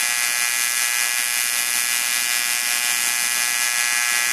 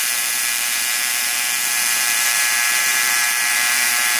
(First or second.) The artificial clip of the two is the second